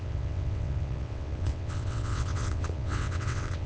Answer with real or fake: fake